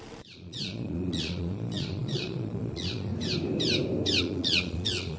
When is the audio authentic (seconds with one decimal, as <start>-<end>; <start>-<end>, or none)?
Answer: 3.1-4.2